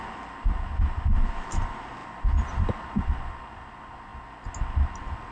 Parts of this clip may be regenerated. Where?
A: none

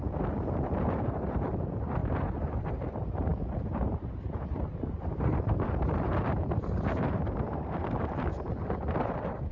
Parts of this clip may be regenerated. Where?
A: 0.0-9.5 (vocoder, BigVGAN v2)